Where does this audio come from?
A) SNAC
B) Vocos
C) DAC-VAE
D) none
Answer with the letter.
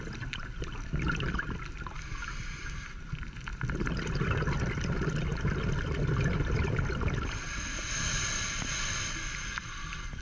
D